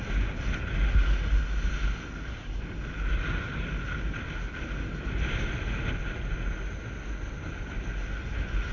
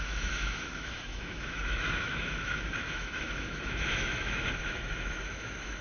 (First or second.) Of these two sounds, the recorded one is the first